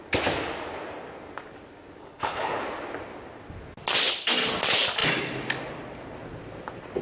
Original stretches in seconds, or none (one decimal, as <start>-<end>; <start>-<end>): 0.0-2.0; 2.6-7.0